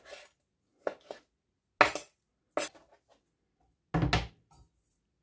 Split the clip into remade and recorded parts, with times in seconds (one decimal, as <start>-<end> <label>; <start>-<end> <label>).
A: 0.0-5.2 recorded